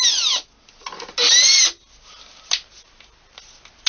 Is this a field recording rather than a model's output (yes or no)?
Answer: yes